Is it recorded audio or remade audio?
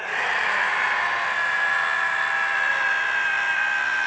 recorded